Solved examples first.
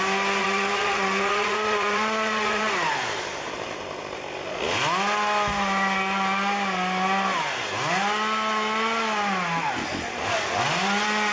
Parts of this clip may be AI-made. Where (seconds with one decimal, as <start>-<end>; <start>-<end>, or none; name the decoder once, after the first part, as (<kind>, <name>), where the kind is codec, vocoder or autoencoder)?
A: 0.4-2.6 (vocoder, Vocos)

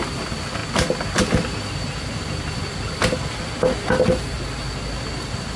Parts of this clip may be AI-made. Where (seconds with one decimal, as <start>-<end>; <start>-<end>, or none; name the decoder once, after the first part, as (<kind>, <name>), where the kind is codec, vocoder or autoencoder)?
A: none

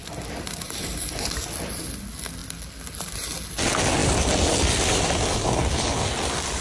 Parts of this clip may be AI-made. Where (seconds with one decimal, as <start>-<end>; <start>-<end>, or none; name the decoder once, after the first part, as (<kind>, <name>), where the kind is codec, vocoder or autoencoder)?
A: 0.0-2.0 (vocoder, BigVGAN v2)